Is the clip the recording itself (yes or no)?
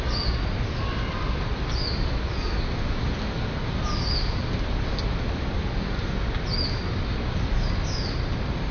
yes